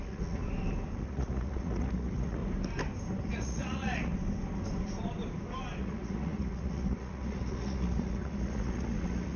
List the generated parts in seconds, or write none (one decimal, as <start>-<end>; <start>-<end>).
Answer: 0.0-0.4; 1.0-2.4; 3.3-4.1; 5.8-9.4